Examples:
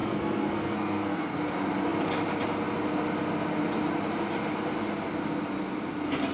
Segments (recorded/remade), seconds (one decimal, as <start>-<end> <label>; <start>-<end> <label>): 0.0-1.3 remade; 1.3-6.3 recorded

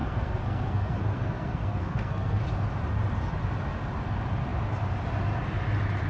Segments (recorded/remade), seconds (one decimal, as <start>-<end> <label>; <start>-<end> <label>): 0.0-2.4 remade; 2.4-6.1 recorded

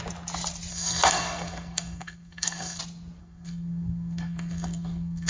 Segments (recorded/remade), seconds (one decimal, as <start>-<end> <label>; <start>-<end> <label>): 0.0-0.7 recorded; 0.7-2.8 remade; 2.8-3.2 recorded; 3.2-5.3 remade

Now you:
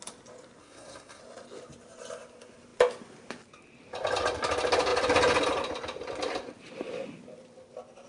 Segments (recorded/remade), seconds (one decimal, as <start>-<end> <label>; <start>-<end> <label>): 0.0-0.6 recorded; 0.6-1.2 remade; 1.2-8.1 recorded